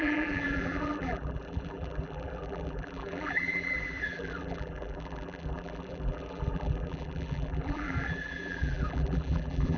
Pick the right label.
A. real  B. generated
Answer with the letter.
B